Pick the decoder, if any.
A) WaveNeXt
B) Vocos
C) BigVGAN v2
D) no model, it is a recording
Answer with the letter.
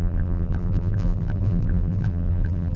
C